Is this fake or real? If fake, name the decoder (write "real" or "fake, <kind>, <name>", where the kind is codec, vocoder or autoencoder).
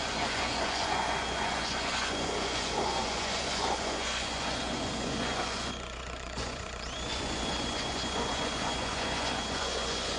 fake, vocoder, Vocos